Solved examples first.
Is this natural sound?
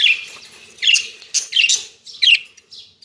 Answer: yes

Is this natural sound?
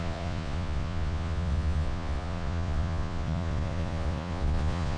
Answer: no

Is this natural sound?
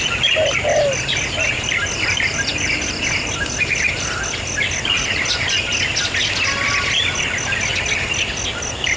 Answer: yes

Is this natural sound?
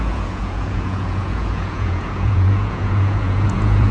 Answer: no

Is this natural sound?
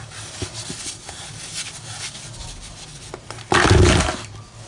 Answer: yes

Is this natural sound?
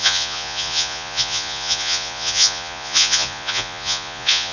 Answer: no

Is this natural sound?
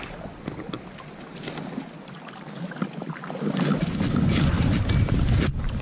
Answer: yes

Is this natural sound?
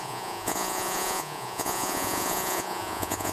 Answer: no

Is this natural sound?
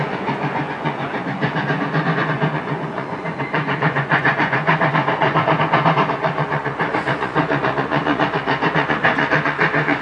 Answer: no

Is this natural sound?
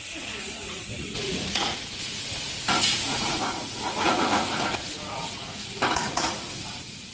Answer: no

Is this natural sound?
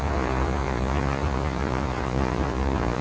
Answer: no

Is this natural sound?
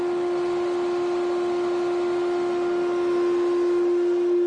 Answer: yes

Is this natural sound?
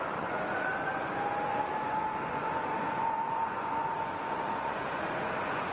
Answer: no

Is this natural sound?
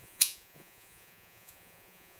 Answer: no